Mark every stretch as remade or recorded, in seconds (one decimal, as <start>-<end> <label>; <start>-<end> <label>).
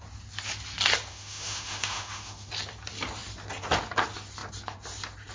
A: 0.0-1.1 recorded; 1.1-2.5 remade; 2.5-5.3 recorded